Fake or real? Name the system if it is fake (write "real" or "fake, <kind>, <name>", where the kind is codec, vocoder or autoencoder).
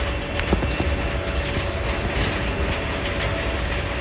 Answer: real